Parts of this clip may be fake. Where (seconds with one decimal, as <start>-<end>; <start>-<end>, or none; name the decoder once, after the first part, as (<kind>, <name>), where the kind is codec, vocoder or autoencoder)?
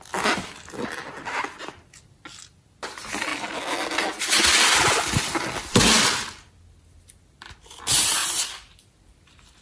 none